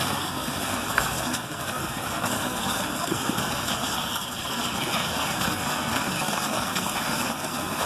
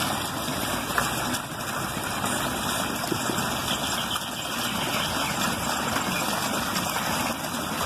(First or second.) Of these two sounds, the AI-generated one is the first